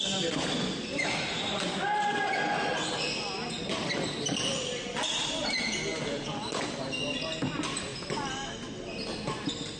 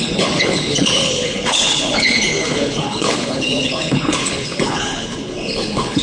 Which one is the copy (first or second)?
second